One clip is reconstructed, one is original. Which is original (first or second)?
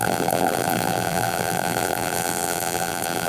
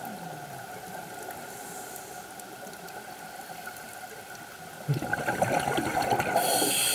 second